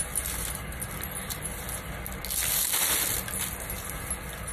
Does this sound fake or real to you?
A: real